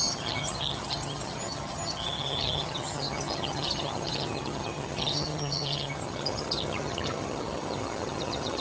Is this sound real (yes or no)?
no